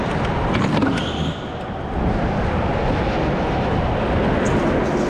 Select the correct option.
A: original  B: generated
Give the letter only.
A